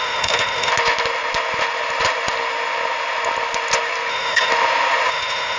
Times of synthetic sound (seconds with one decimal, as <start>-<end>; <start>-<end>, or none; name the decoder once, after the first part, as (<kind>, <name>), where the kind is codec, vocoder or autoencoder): 0.0-0.7 (autoencoder, DAC-VAE); 4.1-4.5; 5.1-5.6